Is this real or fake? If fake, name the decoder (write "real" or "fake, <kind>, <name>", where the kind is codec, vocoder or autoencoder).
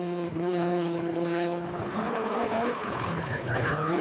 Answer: fake, codec, HILCodec